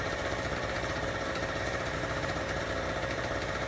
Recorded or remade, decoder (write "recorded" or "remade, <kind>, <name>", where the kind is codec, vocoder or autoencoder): remade, vocoder, BigVGAN v2